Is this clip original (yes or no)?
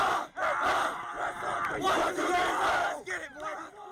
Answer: yes